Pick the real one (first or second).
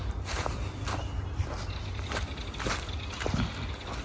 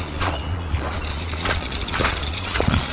first